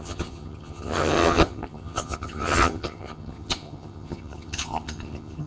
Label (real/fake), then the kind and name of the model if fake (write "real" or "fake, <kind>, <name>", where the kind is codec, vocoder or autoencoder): fake, vocoder, HiFi-GAN